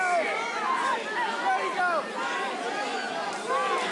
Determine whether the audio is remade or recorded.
recorded